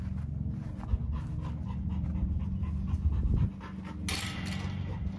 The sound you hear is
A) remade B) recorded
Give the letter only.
B